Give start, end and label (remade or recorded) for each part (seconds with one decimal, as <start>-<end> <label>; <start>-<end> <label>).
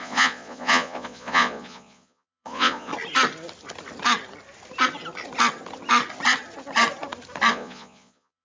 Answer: 0.0-2.9 remade; 2.9-7.5 recorded; 7.5-8.4 remade